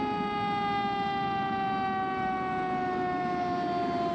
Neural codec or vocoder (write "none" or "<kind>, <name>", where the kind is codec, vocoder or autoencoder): none